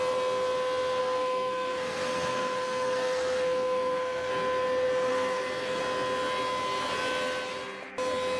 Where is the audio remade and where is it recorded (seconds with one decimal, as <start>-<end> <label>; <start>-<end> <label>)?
0.0-1.0 recorded; 1.0-4.3 remade; 4.3-5.1 recorded; 5.1-5.8 remade; 5.8-8.4 recorded